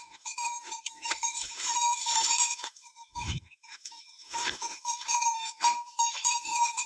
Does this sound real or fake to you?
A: fake